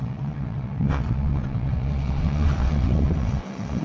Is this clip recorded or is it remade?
remade